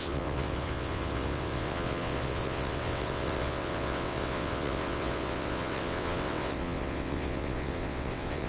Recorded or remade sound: remade